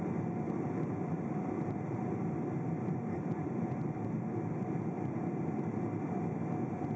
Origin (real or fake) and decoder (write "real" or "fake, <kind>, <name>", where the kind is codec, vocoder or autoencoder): fake, vocoder, BigVGAN v2